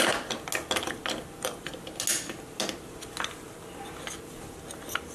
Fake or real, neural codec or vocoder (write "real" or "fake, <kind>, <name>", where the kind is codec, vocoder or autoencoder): real